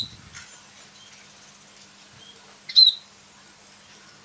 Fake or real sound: real